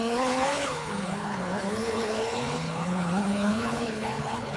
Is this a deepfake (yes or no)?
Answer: yes